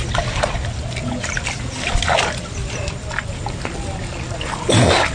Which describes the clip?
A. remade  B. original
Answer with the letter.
B